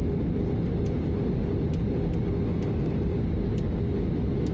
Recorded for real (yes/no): yes